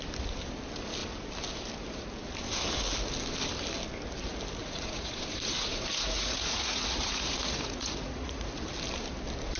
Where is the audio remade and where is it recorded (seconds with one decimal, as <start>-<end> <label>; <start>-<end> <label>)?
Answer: 0.0-4.6 recorded; 4.6-8.6 remade; 8.6-9.6 recorded